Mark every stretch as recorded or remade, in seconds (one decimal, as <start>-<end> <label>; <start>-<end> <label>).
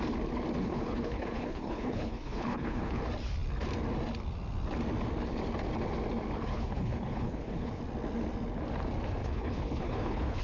0.0-0.6 recorded; 0.6-3.0 remade; 3.0-6.5 recorded; 6.5-7.8 remade; 7.8-9.2 recorded; 9.2-10.4 remade